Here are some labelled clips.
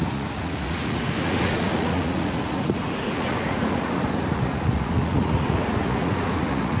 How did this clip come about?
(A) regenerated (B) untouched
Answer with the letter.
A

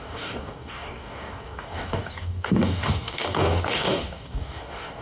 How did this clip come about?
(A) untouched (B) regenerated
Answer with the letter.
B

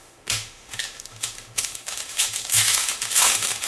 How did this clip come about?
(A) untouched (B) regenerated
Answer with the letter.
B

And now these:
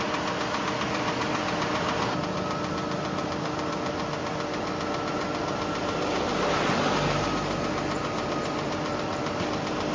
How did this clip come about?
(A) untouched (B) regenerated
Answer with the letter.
A